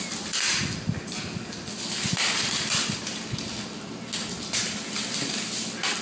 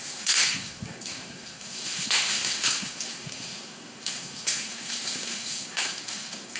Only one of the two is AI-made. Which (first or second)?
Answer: second